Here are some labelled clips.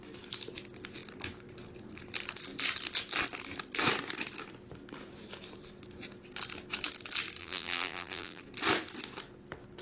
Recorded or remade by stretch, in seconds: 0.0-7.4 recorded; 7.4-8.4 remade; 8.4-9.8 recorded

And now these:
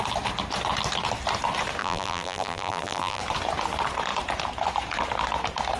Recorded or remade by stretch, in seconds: 0.0-1.8 recorded; 1.8-3.2 remade; 3.2-5.8 recorded

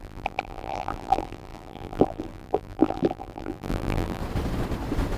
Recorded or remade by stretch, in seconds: 0.0-4.2 remade; 4.2-5.2 recorded

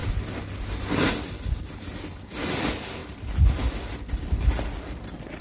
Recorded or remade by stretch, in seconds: 0.0-5.4 recorded

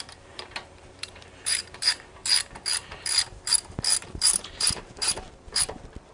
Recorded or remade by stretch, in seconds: 0.0-2.2 remade; 2.2-4.0 recorded; 4.0-6.1 remade

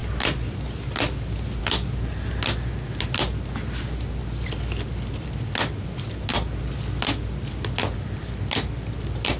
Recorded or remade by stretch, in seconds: 0.0-9.4 recorded